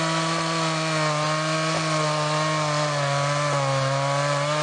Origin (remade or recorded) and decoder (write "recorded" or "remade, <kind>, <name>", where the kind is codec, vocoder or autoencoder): recorded